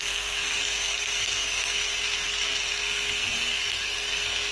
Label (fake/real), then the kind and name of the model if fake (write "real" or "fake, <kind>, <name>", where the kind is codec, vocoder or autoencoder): fake, codec, SNAC